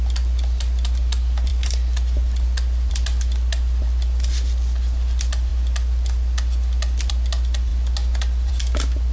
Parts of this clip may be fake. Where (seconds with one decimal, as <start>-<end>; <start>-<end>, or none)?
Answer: none